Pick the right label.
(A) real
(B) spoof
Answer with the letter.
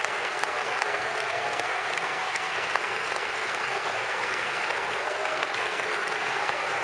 B